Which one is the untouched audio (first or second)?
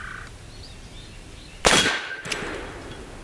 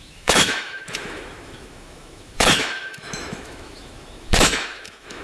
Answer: first